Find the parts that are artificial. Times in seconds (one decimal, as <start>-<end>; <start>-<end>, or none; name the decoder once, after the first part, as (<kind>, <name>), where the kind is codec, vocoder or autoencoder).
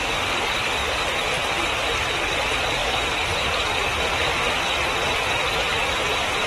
2.8-4.5 (vocoder, BigVGAN v2); 5.7-6.5